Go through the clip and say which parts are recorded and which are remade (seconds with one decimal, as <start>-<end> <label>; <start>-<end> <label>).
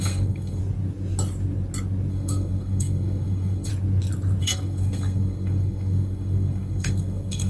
0.0-0.6 remade; 0.6-2.1 recorded; 2.1-3.7 remade; 3.7-4.4 recorded; 4.4-7.5 remade